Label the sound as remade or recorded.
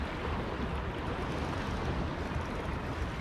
recorded